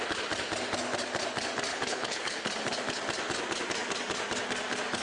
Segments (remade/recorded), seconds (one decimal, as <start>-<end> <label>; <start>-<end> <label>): 0.0-1.7 recorded; 1.7-2.4 remade; 2.4-5.0 recorded